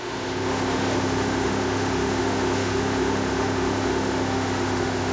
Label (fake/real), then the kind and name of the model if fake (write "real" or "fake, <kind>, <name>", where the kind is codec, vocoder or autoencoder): fake, autoencoder, DAC-VAE